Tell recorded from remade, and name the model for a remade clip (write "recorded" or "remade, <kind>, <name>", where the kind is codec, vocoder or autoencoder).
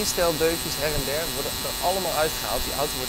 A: remade, vocoder, BigVGAN v2